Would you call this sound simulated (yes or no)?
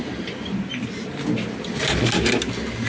no